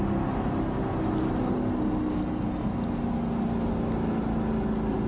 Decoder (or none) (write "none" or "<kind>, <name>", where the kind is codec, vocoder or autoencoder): none